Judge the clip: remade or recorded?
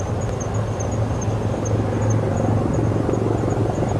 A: recorded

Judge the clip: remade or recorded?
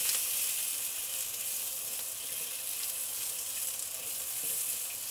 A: recorded